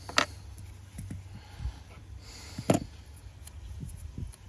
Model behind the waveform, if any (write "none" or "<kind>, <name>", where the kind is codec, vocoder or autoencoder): none